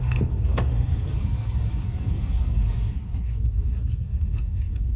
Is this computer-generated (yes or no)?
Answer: yes